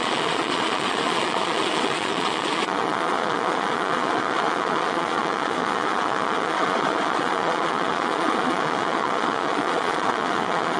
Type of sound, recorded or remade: remade